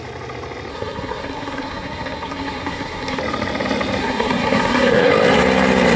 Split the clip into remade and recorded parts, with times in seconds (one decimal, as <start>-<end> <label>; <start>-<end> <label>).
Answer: 0.0-0.7 recorded; 0.7-3.2 remade; 3.2-4.0 recorded; 4.0-5.1 remade; 5.1-6.0 recorded